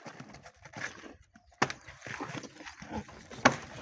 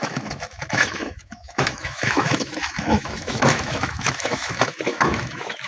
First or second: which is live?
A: first